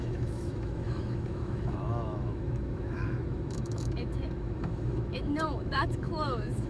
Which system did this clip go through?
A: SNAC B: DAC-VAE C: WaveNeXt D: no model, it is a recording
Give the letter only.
B